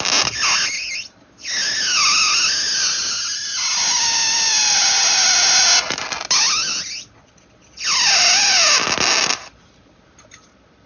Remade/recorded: recorded